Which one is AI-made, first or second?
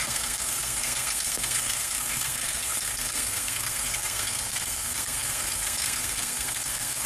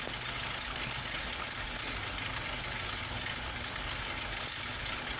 first